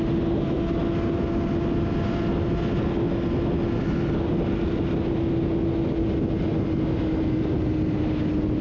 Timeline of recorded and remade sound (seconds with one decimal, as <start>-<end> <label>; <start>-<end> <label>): 0.0-8.6 recorded